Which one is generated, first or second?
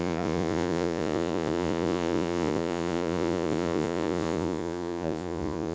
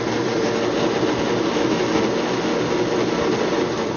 first